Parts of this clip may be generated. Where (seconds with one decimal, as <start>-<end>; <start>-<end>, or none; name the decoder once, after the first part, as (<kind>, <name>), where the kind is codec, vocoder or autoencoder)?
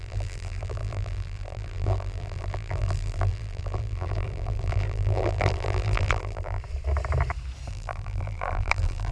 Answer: 0.0-6.6 (vocoder, BigVGAN v2); 7.7-9.1